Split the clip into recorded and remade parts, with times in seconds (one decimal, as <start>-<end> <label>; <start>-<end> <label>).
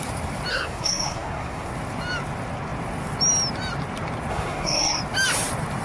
0.0-0.5 recorded; 0.5-1.7 remade; 1.7-4.3 recorded; 4.3-5.0 remade; 5.0-5.8 recorded